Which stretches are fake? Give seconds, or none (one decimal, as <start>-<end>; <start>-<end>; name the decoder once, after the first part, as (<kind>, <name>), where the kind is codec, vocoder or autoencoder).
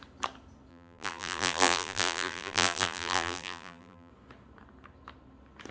0.7-4.1 (vocoder, BigVGAN v2)